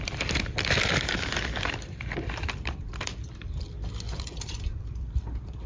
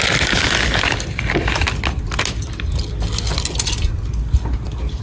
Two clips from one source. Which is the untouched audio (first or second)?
second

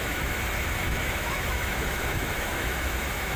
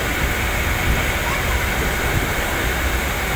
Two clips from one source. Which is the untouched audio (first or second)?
second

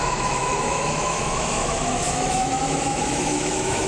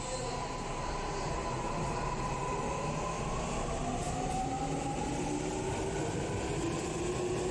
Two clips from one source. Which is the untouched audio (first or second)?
second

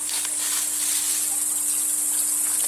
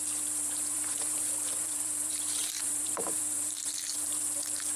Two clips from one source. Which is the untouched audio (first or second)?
first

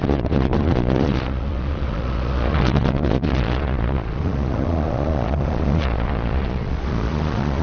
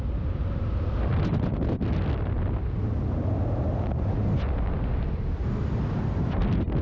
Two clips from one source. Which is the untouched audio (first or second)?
second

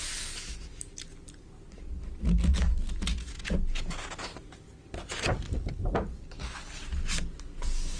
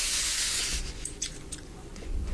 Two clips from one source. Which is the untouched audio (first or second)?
first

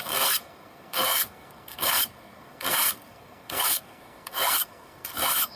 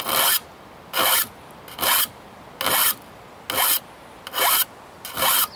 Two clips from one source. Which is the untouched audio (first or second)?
second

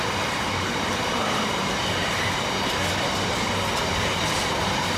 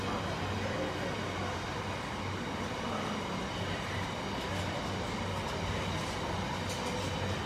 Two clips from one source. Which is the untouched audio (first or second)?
second